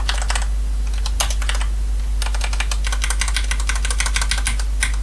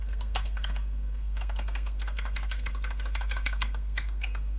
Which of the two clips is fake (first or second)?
second